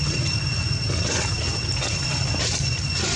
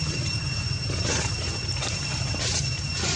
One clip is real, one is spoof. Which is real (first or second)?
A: first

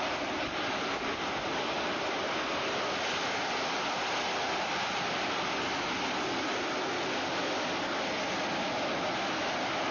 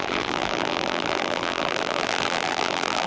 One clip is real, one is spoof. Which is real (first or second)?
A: first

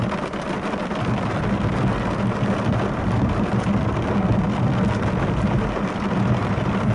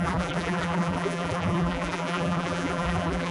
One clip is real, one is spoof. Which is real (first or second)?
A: first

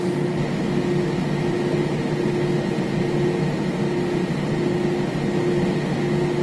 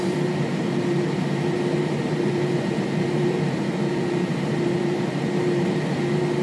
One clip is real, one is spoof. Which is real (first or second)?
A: first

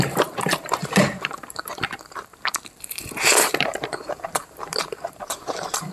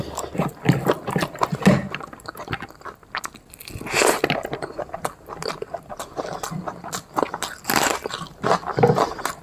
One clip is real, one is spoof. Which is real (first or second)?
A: second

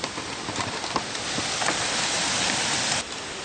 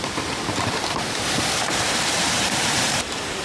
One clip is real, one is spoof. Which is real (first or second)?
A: first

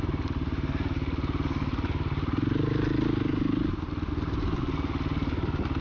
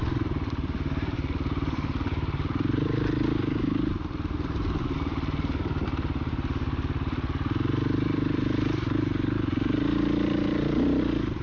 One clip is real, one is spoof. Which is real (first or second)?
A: first